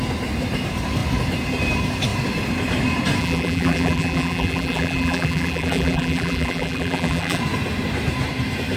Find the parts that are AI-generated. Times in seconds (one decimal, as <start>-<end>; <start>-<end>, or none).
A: 3.2-7.4